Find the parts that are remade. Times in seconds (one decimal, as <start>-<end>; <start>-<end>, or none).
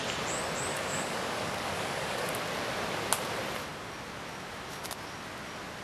0.7-2.3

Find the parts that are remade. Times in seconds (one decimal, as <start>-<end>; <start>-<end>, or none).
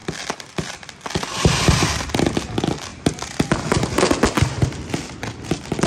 none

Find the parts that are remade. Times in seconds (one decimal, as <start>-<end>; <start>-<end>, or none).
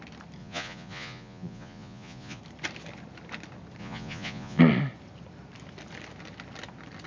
0.4-2.4; 3.8-4.6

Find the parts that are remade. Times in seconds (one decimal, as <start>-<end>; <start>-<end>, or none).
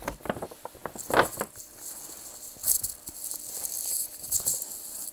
none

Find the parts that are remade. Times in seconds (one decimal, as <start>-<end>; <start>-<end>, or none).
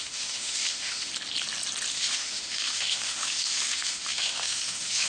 0.0-1.1; 1.9-5.1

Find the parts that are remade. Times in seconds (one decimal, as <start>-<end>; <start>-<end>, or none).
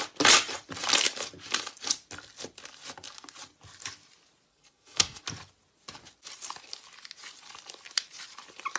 4.5-5.2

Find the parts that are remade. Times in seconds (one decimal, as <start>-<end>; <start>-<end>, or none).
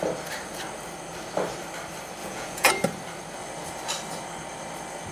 2.2-2.7